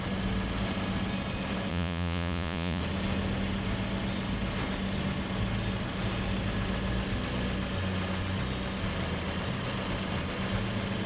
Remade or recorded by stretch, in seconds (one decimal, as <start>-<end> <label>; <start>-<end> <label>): 0.0-1.7 recorded; 1.7-2.8 remade; 2.8-11.1 recorded